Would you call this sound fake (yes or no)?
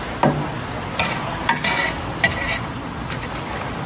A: no